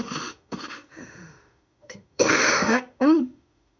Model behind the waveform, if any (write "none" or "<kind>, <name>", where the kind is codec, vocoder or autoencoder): autoencoder, DAC-VAE